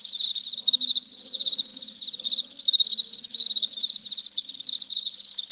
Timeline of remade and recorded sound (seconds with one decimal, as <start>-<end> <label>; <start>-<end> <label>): 0.0-5.5 recorded